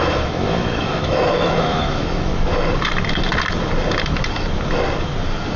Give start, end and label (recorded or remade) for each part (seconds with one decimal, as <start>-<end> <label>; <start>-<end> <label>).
0.0-2.3 remade; 2.3-5.6 recorded